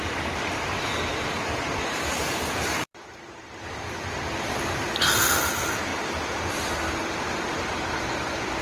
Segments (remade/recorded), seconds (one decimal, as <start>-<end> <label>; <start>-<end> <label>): 0.0-1.1 recorded; 1.1-3.4 remade; 3.4-8.6 recorded